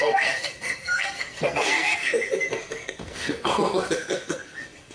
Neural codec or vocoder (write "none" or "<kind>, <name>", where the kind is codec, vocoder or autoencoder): codec, SNAC